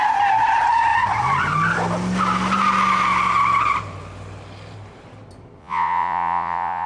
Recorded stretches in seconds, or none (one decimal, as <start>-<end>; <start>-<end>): 0.0-5.6